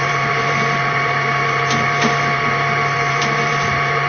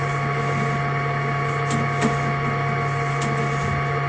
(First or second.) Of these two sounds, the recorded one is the second